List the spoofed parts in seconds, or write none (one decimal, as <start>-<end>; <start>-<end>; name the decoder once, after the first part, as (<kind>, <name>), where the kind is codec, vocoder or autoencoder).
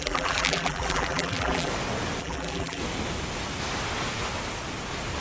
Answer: 0.0-1.7 (vocoder, BigVGAN v2); 2.2-2.8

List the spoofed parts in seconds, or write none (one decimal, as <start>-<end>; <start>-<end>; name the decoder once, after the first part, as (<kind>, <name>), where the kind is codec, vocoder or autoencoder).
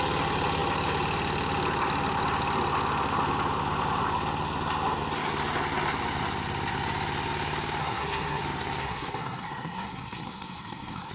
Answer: 7.8-8.4 (codec, SNAC); 8.8-11.1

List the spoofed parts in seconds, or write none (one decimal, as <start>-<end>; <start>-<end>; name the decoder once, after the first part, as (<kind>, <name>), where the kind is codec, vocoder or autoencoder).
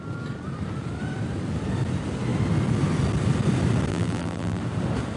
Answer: 3.9-4.6 (vocoder, BigVGAN v2)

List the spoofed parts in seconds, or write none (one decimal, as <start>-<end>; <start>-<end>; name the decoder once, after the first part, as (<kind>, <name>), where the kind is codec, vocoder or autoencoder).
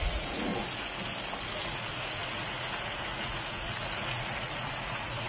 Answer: 0.0-0.5 (vocoder, Vocos); 1.5-5.3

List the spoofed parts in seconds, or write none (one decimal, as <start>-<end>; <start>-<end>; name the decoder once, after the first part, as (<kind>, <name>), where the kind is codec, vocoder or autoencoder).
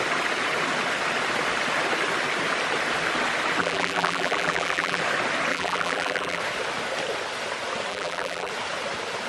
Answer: 3.6-5.0 (vocoder, BigVGAN v2); 5.5-6.4; 7.9-8.5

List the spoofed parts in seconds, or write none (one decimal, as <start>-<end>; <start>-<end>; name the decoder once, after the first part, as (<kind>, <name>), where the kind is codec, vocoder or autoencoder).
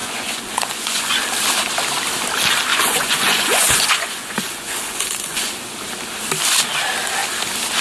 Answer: 0.0-1.2 (vocoder, Vocos); 2.7-5.5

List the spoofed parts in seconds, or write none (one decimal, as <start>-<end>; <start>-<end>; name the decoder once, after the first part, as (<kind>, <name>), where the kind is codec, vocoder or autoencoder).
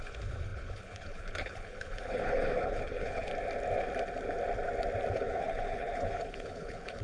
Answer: 0.0-3.3 (codec, HILCodec); 5.1-7.0